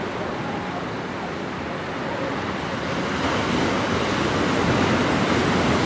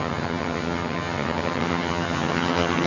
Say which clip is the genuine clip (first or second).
first